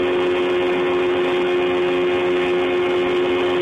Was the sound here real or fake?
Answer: real